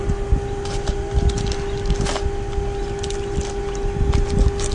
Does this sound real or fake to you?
real